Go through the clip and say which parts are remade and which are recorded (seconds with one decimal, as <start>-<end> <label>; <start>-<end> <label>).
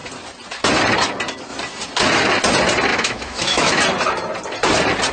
0.0-2.9 recorded; 2.9-3.8 remade; 3.8-5.1 recorded